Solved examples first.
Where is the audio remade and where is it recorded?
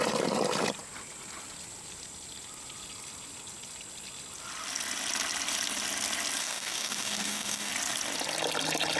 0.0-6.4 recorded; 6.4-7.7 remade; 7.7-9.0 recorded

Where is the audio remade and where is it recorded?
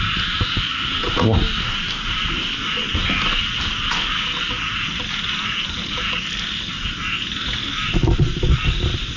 0.0-9.2 recorded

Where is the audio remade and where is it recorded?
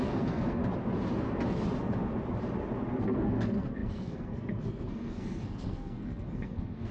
0.0-0.6 remade; 0.6-3.0 recorded; 3.0-6.9 remade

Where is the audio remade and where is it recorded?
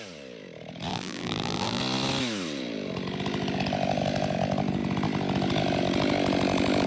0.0-0.9 recorded; 0.9-1.8 remade; 1.8-6.9 recorded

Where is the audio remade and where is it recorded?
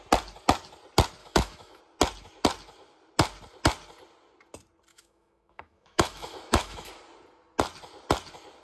0.0-1.2 recorded; 1.2-1.8 remade; 1.8-4.9 recorded; 4.9-6.9 remade; 6.9-8.6 recorded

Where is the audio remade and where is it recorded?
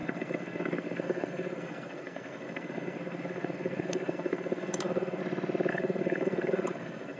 0.0-5.2 remade; 5.2-5.7 recorded; 5.7-7.2 remade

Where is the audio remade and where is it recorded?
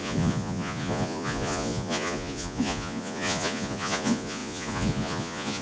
0.0-5.6 remade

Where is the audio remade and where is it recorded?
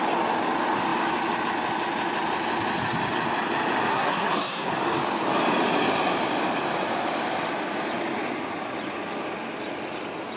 0.0-3.9 recorded; 3.9-4.7 remade; 4.7-10.4 recorded